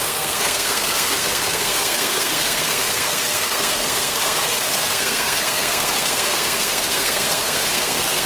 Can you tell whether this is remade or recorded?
remade